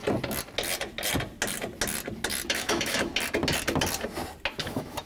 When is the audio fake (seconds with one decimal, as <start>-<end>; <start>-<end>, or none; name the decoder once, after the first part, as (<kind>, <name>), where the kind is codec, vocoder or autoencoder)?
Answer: 2.5-3.1 (autoencoder, DAC-VAE); 4.6-5.1